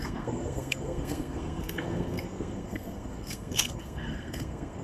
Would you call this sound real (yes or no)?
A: no